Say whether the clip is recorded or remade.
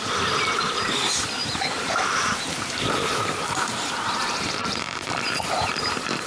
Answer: remade